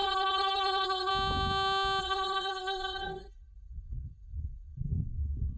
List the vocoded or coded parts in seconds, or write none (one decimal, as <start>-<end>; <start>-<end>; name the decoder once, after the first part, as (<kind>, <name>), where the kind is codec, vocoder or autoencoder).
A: 0.0-1.1 (codec, SNAC); 2.0-5.6